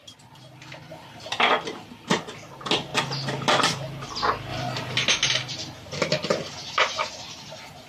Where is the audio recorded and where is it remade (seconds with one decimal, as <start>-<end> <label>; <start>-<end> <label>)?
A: 0.0-7.9 recorded